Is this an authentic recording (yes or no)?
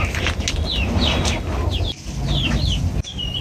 yes